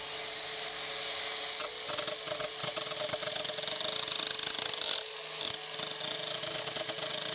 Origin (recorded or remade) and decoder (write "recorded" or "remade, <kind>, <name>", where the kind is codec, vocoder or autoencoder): recorded